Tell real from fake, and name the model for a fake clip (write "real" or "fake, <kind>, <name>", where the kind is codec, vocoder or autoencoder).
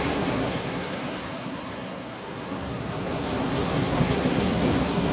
fake, codec, SNAC